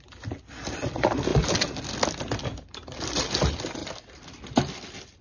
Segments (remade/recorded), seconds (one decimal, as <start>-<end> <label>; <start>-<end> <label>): 0.0-5.2 recorded